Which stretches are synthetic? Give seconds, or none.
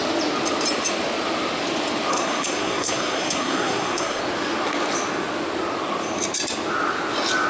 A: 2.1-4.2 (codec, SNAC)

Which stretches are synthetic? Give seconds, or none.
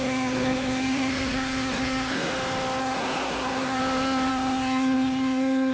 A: 0.0-2.3 (codec, SNAC); 2.8-3.8; 4.3-5.7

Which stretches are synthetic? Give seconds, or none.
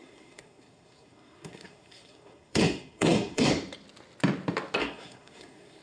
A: 0.0-3.5 (codec, SNAC); 4.8-5.8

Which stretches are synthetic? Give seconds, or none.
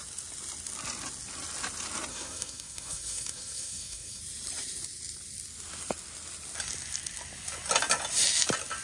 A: 2.1-4.2 (codec, SNAC)